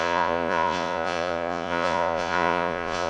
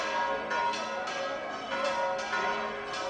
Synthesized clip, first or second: first